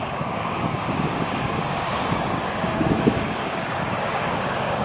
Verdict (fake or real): fake